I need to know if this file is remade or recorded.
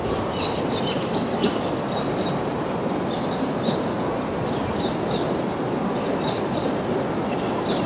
recorded